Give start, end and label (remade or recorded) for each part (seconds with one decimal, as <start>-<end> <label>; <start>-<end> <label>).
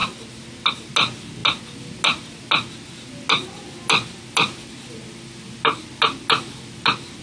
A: 0.0-7.2 recorded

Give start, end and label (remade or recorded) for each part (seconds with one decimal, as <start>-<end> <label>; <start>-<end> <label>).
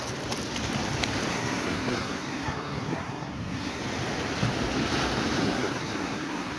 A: 0.0-1.3 recorded; 1.3-3.8 remade; 3.8-5.4 recorded; 5.4-6.6 remade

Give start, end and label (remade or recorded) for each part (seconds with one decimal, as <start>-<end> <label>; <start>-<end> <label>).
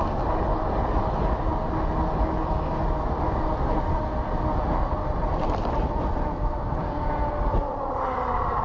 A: 0.0-6.8 recorded; 6.8-7.3 remade; 7.3-8.6 recorded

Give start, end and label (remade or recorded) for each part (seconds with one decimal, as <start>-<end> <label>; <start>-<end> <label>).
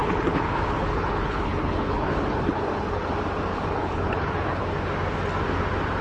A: 0.0-3.1 remade; 3.1-3.5 recorded; 3.5-4.6 remade; 4.6-6.0 recorded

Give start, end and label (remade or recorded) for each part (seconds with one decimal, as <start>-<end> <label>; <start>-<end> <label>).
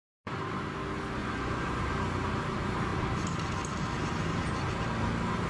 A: 0.0-1.2 recorded; 1.2-1.9 remade; 1.9-5.5 recorded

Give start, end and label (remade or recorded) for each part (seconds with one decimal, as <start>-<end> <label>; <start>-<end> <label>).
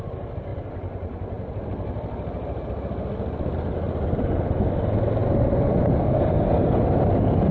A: 0.0-7.5 recorded